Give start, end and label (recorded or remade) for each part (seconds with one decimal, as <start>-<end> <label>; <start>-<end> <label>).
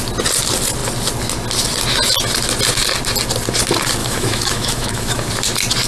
0.0-4.0 recorded; 4.0-5.3 remade; 5.3-5.9 recorded